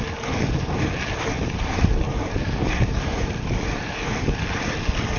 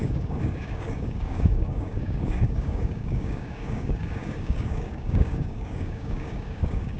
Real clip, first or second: first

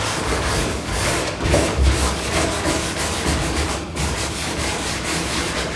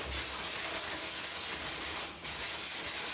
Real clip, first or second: second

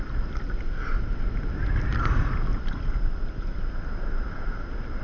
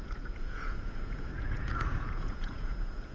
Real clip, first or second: first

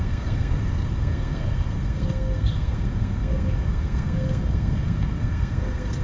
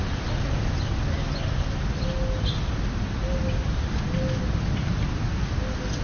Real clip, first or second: second